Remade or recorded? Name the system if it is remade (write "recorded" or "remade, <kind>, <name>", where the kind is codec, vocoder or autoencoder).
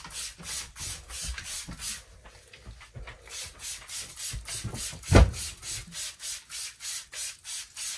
recorded